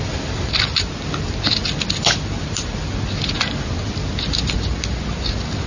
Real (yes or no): yes